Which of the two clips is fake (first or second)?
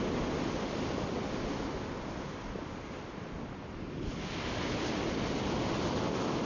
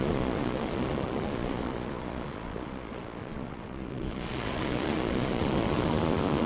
second